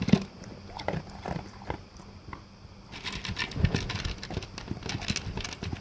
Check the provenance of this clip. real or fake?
real